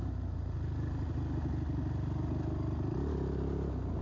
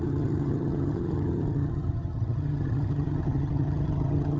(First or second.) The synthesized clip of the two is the second